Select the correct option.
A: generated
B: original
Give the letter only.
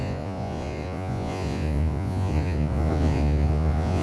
A